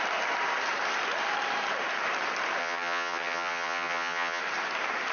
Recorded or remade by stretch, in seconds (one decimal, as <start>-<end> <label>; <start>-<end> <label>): 0.0-2.6 recorded; 2.6-4.4 remade; 4.4-5.1 recorded